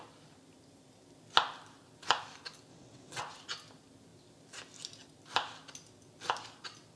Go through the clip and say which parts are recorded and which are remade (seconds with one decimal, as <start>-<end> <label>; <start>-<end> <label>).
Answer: 0.0-2.7 recorded; 2.7-3.2 remade; 3.2-7.0 recorded

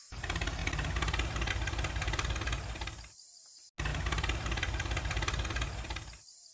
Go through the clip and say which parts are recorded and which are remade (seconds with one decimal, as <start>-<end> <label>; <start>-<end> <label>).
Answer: 0.0-6.5 recorded

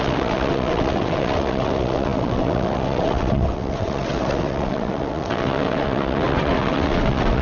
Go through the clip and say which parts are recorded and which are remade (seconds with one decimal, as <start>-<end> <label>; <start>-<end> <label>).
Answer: 0.0-7.4 remade

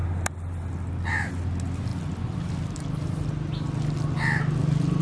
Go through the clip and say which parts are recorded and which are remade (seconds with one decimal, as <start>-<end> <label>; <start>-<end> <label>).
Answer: 0.0-5.0 recorded

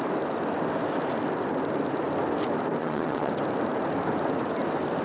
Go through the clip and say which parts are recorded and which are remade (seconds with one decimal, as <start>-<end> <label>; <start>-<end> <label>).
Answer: 0.0-2.8 recorded; 2.8-3.3 remade; 3.3-5.0 recorded

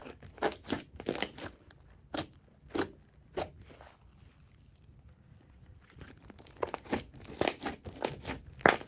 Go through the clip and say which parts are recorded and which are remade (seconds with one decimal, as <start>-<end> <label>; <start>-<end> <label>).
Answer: 0.0-8.9 recorded

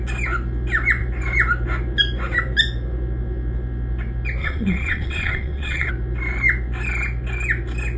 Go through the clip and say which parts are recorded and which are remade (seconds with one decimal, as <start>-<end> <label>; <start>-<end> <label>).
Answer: 0.0-4.4 recorded; 4.4-5.9 remade; 5.9-8.0 recorded

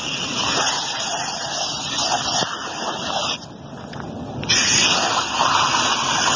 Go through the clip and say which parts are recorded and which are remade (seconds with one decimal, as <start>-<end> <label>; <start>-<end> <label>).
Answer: 0.0-6.4 recorded